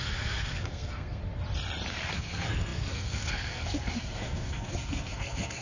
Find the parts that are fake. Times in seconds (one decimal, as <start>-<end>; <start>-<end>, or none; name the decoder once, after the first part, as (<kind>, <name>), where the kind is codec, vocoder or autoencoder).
0.0-1.2 (codec, SNAC); 1.9-5.6